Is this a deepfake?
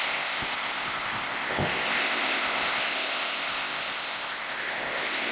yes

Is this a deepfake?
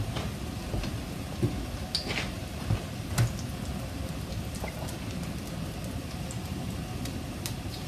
no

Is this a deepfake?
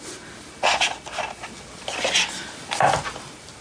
no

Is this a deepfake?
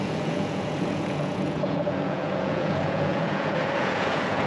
yes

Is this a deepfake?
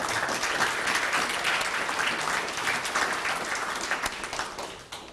no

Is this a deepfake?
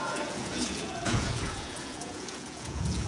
yes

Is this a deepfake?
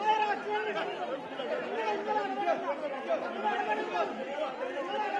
no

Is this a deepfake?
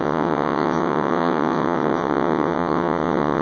yes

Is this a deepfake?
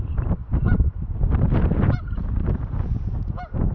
yes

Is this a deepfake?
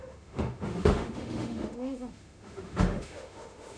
yes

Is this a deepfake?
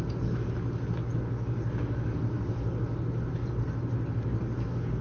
no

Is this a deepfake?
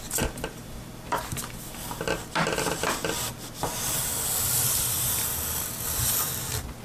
no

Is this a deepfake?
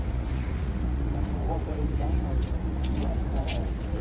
yes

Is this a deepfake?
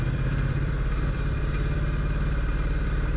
yes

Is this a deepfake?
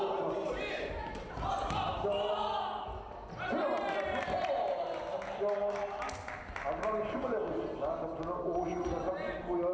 no